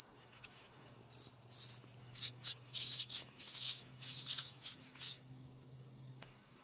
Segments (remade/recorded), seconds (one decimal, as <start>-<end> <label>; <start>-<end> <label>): 0.0-1.0 remade; 1.0-2.0 recorded; 2.0-6.6 remade